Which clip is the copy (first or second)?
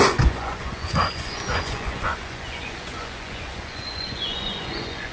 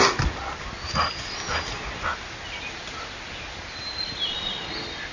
first